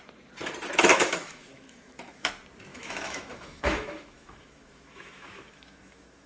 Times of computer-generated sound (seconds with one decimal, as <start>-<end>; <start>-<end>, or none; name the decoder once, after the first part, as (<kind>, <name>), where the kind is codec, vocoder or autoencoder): 0.9-2.3 (autoencoder, DAC-VAE); 2.7-6.3